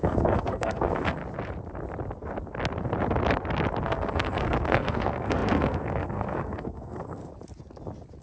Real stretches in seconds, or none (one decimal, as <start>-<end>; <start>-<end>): 1.2-3.8; 7.3-8.2